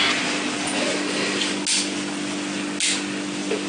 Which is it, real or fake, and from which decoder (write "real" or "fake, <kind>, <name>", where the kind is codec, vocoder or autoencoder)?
real